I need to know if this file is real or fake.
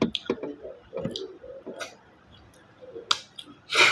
real